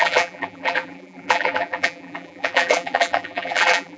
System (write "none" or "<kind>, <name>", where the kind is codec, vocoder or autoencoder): vocoder, BigVGAN v2